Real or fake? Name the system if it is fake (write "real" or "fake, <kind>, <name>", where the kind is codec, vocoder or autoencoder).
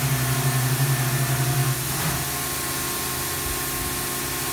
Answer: real